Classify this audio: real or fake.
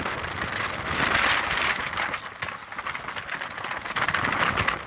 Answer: real